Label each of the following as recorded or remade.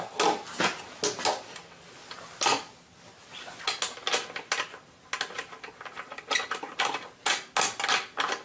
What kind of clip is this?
recorded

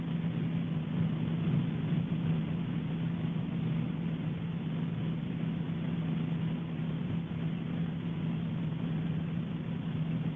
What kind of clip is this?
recorded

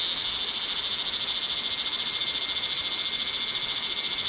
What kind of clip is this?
recorded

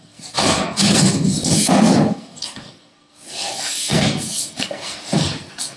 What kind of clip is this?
remade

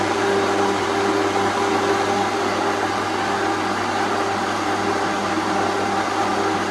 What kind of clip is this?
recorded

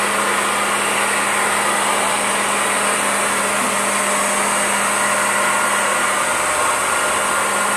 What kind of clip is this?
recorded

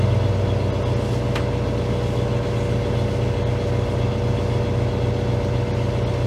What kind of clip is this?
recorded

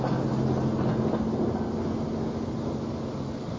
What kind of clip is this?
recorded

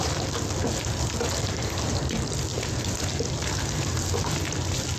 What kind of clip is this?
recorded